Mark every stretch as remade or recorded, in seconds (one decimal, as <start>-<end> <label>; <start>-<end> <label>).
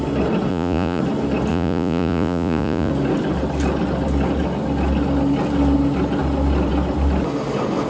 0.0-0.5 recorded; 0.5-1.0 remade; 1.0-1.5 recorded; 1.5-2.9 remade; 2.9-7.9 recorded